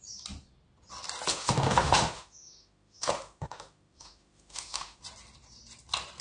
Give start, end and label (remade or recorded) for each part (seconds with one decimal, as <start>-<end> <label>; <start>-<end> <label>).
0.0-1.3 recorded; 1.3-5.0 remade; 5.0-6.2 recorded